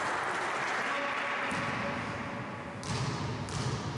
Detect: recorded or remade recorded